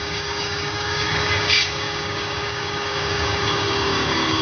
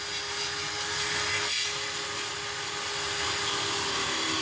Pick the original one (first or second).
second